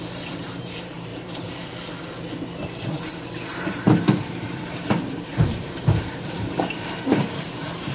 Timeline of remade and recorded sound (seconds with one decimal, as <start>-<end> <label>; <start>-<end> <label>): 0.0-1.1 remade; 1.1-3.6 recorded; 3.6-7.9 remade

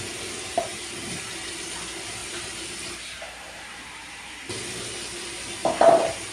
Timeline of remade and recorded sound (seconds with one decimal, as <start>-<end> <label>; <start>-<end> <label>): 0.0-2.2 recorded; 2.2-4.6 remade; 4.6-5.6 recorded; 5.6-6.3 remade

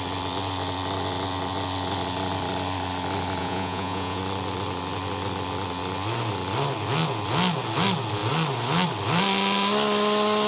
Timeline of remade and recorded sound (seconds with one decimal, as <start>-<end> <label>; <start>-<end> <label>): 0.0-3.4 recorded; 3.4-4.2 remade; 4.2-10.5 recorded

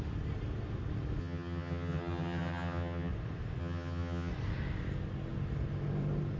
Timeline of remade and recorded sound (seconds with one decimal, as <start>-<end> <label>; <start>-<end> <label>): 0.0-1.2 recorded; 1.2-3.1 remade; 3.1-3.6 recorded; 3.6-4.3 remade; 4.3-6.4 recorded

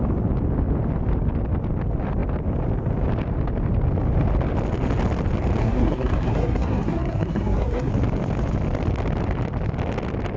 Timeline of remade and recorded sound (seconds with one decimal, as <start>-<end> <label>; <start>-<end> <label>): 0.0-5.6 recorded; 5.6-7.9 remade; 7.9-10.4 recorded

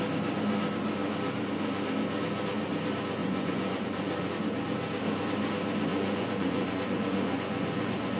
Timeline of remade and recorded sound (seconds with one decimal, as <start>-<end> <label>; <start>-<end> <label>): 0.0-3.2 recorded; 3.2-4.3 remade; 4.3-5.9 recorded; 5.9-8.2 remade

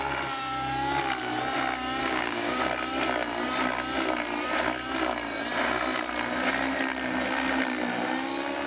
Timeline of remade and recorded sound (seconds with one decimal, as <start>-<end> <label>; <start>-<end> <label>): 0.0-2.0 recorded; 2.0-2.6 remade; 2.6-8.7 recorded

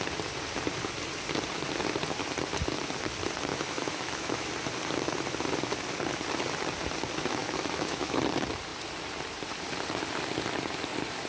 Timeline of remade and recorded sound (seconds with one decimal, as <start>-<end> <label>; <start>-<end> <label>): 0.0-3.5 recorded; 3.5-4.5 remade; 4.5-7.4 recorded; 7.4-8.2 remade; 8.2-11.3 recorded